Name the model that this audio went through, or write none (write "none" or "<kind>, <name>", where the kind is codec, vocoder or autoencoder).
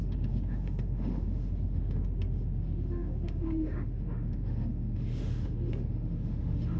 autoencoder, DAC-VAE